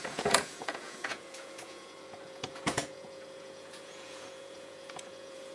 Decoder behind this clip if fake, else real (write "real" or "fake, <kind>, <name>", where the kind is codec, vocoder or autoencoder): fake, vocoder, Vocos